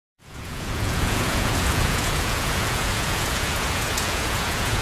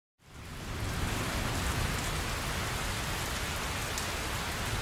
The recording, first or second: second